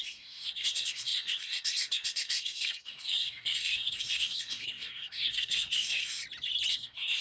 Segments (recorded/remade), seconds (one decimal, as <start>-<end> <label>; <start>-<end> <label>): 0.0-6.2 remade; 6.2-6.7 recorded; 6.7-7.2 remade